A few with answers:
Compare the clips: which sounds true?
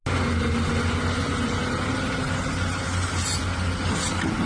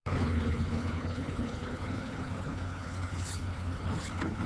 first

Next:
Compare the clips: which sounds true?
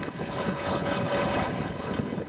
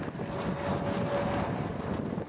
second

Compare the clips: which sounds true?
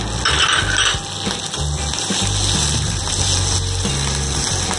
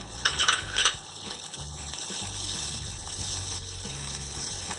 first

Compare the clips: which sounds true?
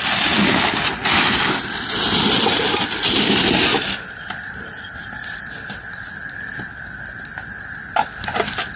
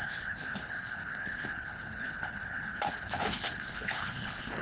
first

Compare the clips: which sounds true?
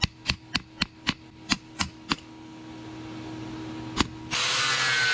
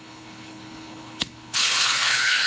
first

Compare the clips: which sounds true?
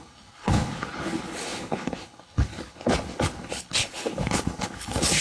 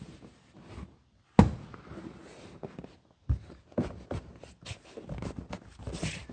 second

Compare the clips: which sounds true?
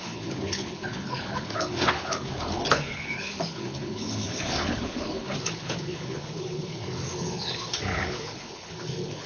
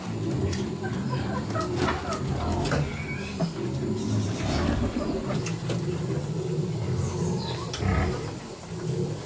second